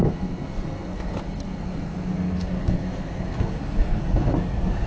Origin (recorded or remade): remade